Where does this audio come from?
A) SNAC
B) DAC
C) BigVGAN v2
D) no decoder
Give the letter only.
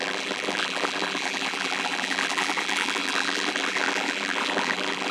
C